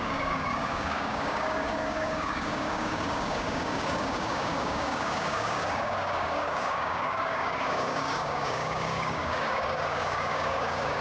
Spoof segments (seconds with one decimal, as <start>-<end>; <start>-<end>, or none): 0.0-11.0